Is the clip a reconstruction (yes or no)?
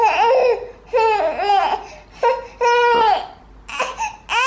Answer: no